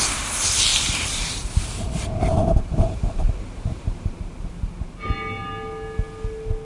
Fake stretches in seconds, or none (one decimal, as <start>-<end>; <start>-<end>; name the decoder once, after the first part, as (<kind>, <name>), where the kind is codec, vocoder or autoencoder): 0.7-4.7 (vocoder, BigVGAN v2)